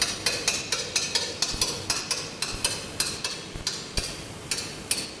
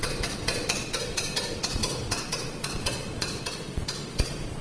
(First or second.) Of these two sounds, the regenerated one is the second